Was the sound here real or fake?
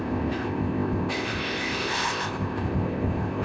fake